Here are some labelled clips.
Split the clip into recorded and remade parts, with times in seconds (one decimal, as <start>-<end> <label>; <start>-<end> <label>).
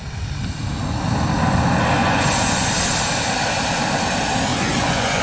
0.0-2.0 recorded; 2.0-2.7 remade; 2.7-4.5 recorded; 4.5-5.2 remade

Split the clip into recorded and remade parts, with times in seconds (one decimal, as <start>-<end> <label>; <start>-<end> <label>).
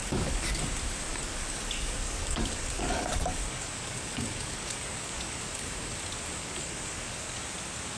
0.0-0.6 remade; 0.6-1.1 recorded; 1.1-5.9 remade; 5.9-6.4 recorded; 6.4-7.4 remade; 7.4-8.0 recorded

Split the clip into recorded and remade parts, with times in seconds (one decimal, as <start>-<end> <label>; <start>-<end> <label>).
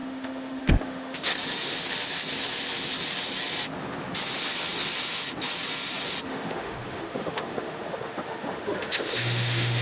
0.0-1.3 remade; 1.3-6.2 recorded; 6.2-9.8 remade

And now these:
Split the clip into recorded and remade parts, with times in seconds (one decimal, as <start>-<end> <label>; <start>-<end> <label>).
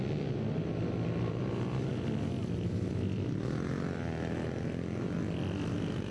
0.0-6.1 recorded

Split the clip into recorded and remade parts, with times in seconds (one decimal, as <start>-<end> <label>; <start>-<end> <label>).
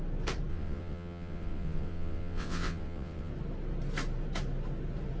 0.0-0.5 recorded; 0.5-3.3 remade; 3.3-5.2 recorded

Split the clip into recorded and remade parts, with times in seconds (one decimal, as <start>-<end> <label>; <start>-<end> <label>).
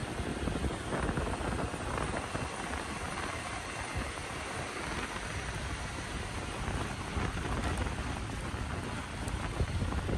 0.0-10.2 recorded